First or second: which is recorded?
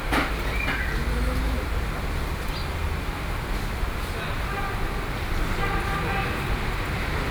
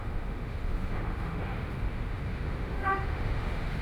first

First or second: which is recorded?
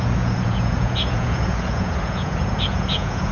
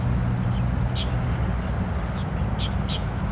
second